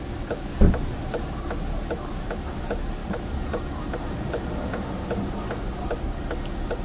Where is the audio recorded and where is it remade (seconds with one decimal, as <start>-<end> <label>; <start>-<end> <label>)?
0.0-0.5 recorded; 0.5-1.3 remade; 1.3-3.0 recorded; 3.0-5.1 remade; 5.1-6.8 recorded